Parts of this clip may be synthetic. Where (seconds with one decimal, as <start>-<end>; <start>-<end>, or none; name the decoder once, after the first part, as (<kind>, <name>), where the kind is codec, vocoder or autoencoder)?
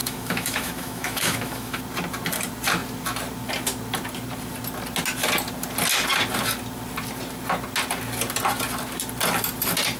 0.0-1.8 (autoencoder, DAC-VAE)